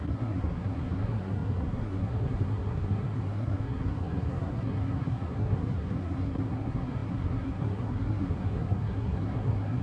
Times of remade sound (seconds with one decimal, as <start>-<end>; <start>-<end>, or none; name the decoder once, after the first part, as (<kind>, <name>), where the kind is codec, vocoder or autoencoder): 0.0-9.8 (codec, SNAC)

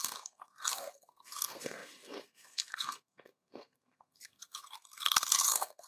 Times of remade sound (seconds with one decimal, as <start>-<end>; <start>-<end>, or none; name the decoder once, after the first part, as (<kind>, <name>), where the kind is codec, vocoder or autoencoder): 0.0-5.9 (codec, SNAC)

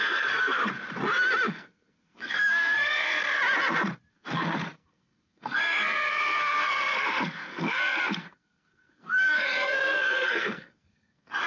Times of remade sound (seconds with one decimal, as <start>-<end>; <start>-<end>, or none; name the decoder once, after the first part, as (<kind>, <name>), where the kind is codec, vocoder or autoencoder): 0.0-0.6 (codec, SNAC); 1.5-3.4; 4.1-11.5

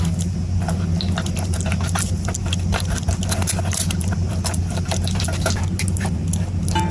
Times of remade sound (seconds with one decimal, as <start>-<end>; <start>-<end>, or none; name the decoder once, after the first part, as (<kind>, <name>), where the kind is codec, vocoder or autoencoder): none